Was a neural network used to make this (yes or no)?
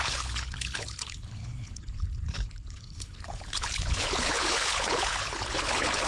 yes